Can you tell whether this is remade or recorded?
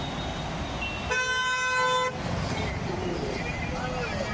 recorded